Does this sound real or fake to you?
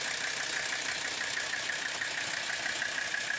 real